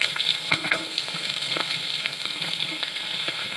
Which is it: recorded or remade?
remade